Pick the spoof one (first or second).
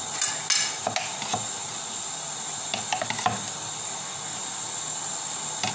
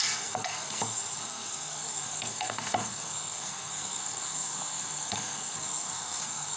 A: second